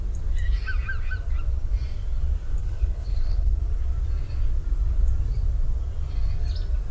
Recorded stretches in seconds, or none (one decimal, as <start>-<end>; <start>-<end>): 0.0-2.6; 3.6-6.9